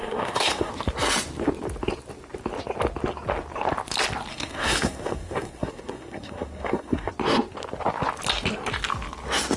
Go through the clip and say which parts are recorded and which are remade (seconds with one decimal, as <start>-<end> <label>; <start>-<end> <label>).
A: 0.0-0.7 remade; 0.7-4.3 recorded; 4.3-7.1 remade; 7.1-9.6 recorded